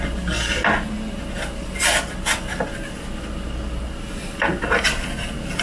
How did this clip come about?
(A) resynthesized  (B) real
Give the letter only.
B